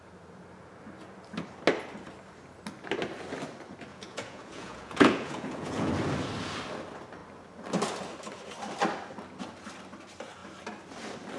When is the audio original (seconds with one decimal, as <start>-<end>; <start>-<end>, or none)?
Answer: 0.0-3.9; 5.9-11.4